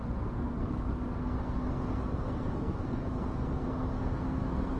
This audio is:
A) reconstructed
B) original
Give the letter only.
A